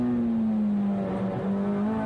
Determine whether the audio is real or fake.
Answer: real